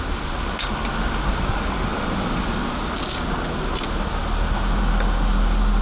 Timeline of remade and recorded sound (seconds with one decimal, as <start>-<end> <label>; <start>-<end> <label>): 0.0-1.9 recorded; 1.9-2.4 remade; 2.4-5.8 recorded